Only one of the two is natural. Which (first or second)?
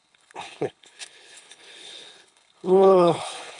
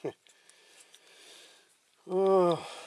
second